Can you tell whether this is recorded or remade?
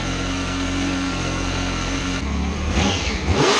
remade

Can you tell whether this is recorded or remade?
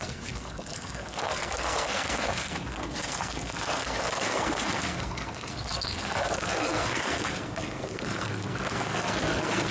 remade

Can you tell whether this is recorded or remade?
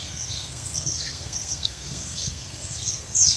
remade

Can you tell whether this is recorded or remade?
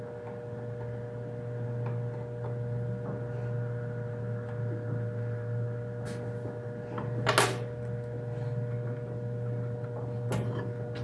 recorded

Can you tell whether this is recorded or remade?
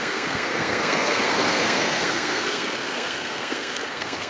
remade